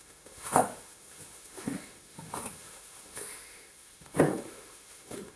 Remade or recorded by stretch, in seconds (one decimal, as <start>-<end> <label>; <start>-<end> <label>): 0.0-5.4 remade